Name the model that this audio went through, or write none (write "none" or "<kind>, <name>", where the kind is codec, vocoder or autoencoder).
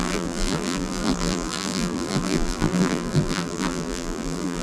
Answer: vocoder, BigVGAN v2